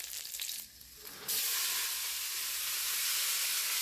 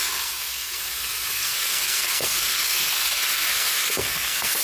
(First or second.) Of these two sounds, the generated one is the second